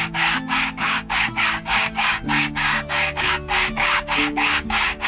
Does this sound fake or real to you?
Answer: fake